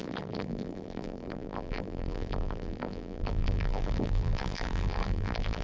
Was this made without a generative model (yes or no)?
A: no